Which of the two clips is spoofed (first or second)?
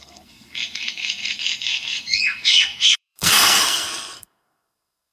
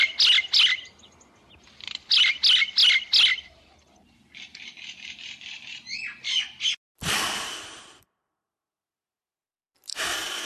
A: first